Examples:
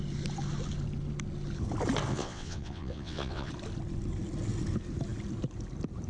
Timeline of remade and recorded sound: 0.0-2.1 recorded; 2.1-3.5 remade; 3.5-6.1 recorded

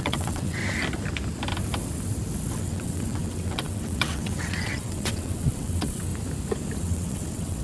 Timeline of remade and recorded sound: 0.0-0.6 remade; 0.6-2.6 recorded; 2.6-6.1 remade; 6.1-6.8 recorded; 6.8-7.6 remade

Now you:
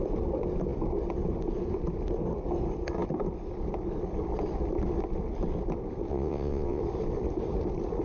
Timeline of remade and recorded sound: 0.0-6.1 recorded; 6.1-6.8 remade; 6.8-8.0 recorded